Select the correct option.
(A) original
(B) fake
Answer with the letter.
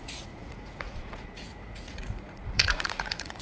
B